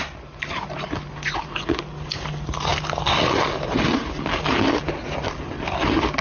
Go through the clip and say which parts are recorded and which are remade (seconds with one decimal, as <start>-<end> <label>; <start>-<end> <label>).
0.0-6.2 recorded

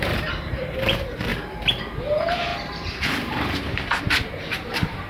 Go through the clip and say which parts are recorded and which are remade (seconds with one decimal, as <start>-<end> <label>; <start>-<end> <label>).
0.0-1.3 remade; 1.3-2.0 recorded; 2.0-5.1 remade

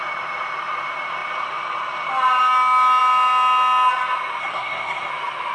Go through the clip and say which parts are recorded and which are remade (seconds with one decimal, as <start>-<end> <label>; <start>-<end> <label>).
0.0-4.4 recorded; 4.4-5.1 remade; 5.1-5.5 recorded

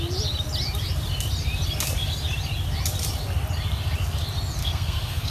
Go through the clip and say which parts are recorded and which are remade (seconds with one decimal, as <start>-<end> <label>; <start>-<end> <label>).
0.0-4.6 recorded; 4.6-5.3 remade

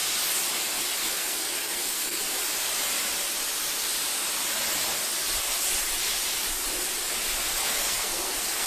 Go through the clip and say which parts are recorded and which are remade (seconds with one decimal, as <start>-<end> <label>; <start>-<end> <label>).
0.0-1.0 recorded; 1.0-2.2 remade; 2.2-7.6 recorded; 7.6-8.7 remade

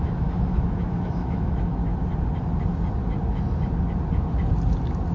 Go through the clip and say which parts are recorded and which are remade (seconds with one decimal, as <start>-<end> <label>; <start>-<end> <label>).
0.0-1.8 remade; 1.8-5.1 recorded

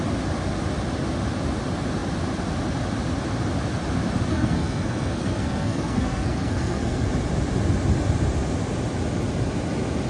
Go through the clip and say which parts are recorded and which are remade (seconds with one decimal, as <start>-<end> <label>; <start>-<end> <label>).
0.0-4.3 recorded; 4.3-7.1 remade; 7.1-10.1 recorded

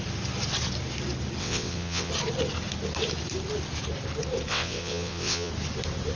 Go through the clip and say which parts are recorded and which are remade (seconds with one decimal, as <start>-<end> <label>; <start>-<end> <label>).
0.0-1.4 recorded; 1.4-2.1 remade; 2.1-4.5 recorded; 4.5-5.5 remade; 5.5-6.2 recorded